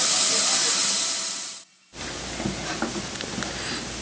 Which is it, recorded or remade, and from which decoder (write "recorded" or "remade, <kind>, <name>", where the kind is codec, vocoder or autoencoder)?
recorded